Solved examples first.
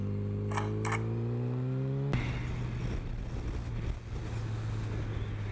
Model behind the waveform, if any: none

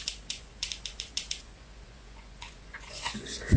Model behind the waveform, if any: vocoder, Vocos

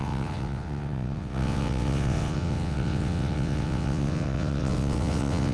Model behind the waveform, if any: vocoder, WaveNeXt